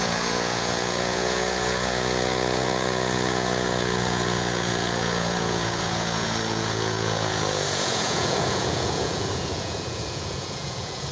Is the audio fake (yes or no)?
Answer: yes